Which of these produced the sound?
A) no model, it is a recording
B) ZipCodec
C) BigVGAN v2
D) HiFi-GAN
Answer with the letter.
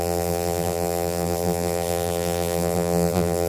C